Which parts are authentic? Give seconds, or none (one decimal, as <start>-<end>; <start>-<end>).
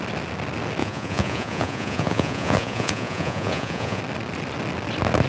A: 0.0-0.8; 4.0-5.3